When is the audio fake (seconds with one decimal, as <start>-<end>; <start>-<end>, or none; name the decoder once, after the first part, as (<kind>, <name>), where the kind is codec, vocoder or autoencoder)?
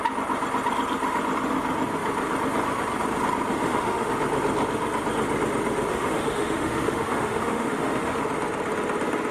3.5-4.1 (autoencoder, DAC-VAE); 5.9-8.2